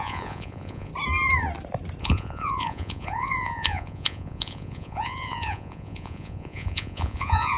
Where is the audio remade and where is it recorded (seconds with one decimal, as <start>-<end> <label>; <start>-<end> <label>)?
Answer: 0.0-0.9 remade; 0.9-2.0 recorded; 2.0-7.6 remade